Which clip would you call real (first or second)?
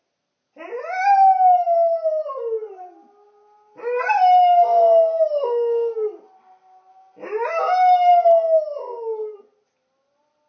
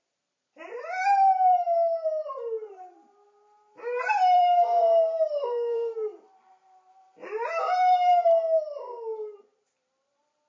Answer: first